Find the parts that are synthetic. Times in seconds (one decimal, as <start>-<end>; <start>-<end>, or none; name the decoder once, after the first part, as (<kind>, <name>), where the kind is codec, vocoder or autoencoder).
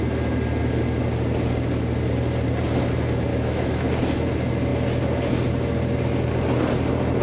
3.3-3.9 (autoencoder, DAC-VAE)